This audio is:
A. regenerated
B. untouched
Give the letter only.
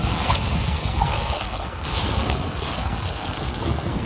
A